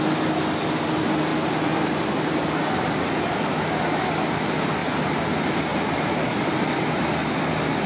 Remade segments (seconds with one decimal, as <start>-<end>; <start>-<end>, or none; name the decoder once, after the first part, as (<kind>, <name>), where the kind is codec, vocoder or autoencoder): 1.3-2.0 (vocoder, BigVGAN v2); 4.8-5.3; 5.7-6.3